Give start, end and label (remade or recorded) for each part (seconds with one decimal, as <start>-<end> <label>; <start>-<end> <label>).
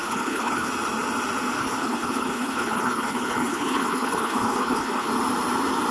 0.0-0.7 remade; 0.7-1.6 recorded; 1.6-5.1 remade; 5.1-5.9 recorded